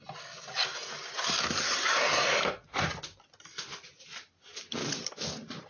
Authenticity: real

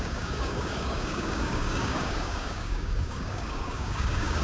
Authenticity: fake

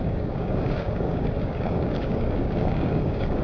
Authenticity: fake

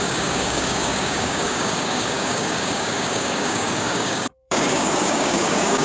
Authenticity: fake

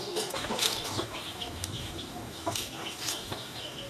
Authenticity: fake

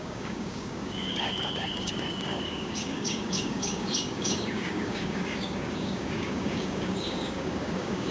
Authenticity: fake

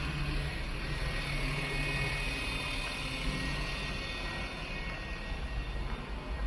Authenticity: real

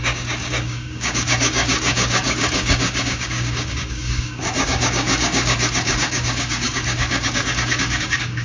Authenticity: fake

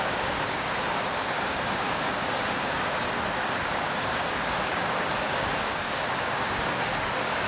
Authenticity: fake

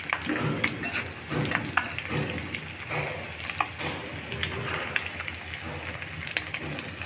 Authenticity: real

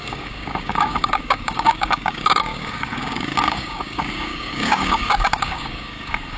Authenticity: fake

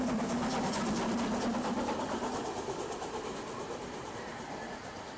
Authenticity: real